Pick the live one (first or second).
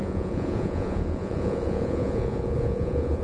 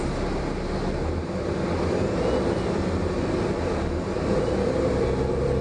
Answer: second